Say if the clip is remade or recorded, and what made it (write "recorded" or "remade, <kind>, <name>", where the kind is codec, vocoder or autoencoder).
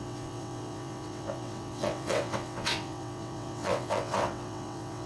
remade, vocoder, WaveNeXt